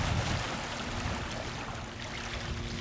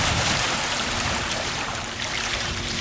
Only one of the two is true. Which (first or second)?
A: first